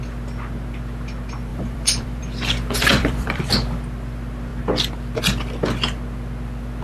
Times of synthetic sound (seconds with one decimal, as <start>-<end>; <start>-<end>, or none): 1.5-2.2; 2.9-3.5